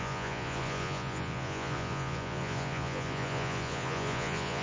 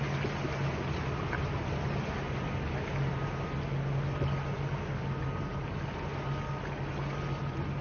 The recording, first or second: second